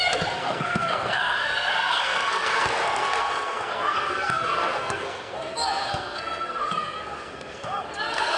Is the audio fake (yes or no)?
yes